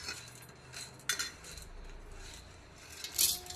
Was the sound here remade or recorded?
recorded